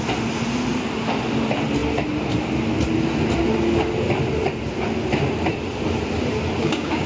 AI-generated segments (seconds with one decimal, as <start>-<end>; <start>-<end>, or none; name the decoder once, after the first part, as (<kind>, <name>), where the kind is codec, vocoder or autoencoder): 6.6-7.1 (codec, DAC)